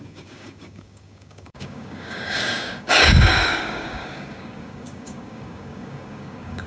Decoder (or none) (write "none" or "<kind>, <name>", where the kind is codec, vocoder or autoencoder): codec, DAC